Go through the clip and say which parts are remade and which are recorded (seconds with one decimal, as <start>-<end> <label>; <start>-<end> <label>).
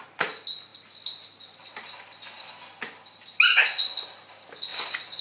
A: 0.0-5.2 recorded